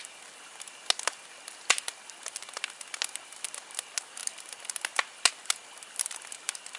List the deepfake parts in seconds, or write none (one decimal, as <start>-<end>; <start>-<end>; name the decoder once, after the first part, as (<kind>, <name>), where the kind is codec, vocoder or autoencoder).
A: none